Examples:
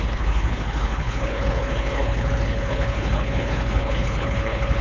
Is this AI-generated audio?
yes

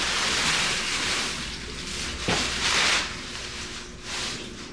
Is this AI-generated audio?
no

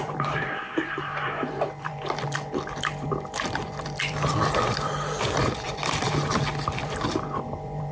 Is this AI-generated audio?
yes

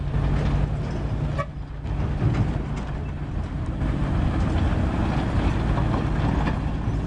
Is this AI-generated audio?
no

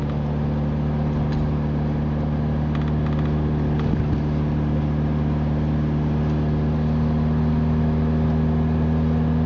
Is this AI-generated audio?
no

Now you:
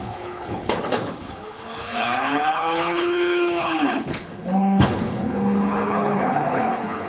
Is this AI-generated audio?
yes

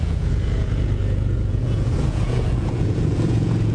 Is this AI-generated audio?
yes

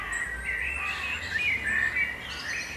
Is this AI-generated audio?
no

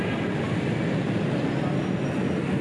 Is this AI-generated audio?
no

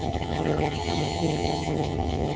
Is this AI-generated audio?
yes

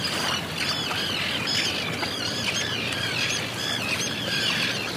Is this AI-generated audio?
no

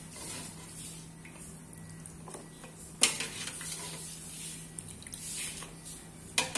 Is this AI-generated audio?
no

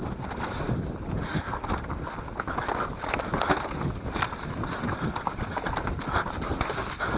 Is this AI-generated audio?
no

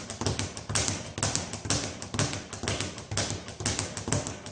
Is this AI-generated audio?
no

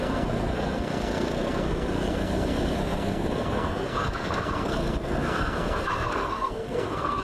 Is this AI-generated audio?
yes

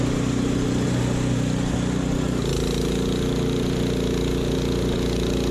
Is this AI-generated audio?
no